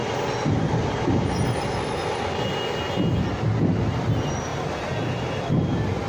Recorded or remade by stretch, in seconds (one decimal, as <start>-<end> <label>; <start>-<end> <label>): 0.0-6.1 recorded